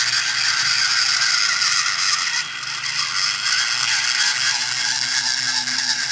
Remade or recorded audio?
recorded